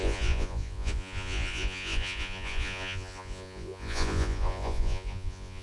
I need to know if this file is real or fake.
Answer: fake